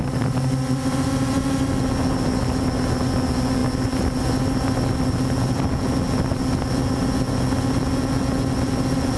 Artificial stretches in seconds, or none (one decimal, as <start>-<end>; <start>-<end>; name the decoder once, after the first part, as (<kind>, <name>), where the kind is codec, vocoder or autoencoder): none